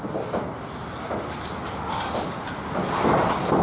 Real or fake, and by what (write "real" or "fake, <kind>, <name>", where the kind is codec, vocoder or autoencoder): real